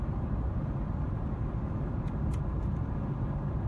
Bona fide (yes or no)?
no